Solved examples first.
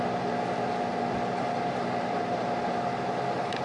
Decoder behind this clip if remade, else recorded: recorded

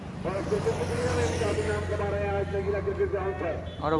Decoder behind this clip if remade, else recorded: recorded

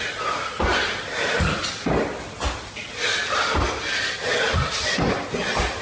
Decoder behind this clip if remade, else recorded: recorded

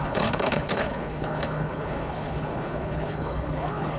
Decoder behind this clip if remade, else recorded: remade, codec, HILCodec